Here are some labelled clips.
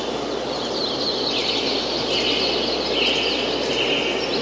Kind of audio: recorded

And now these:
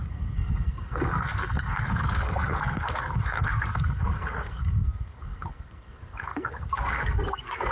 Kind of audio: remade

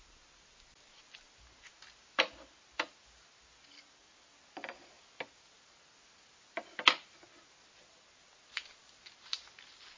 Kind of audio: recorded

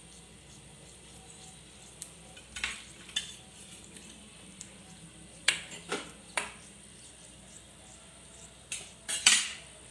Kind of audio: remade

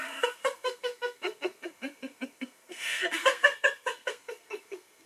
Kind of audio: remade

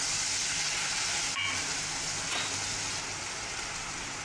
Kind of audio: recorded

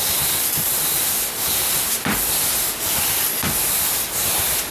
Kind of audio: recorded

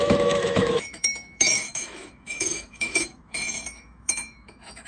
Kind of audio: remade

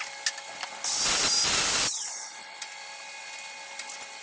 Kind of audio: recorded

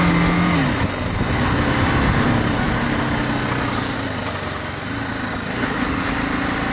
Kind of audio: recorded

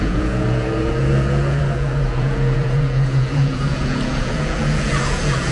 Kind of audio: remade